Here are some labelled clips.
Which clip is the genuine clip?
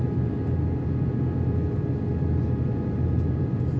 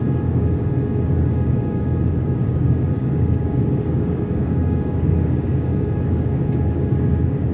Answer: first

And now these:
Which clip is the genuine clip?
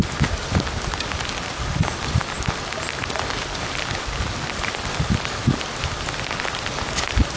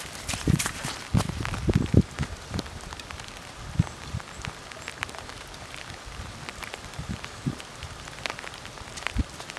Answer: first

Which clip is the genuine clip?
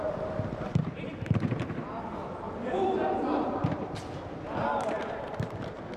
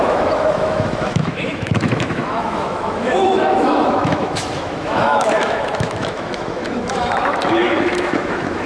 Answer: first